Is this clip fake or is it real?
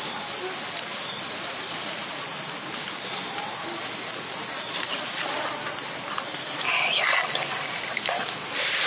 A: real